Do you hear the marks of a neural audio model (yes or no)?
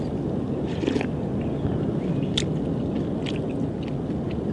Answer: no